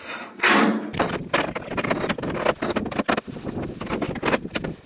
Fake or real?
real